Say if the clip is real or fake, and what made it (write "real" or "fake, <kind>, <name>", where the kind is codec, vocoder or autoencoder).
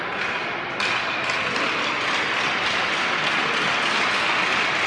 real